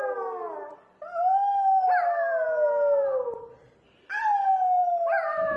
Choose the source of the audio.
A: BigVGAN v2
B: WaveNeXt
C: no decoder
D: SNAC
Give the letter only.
C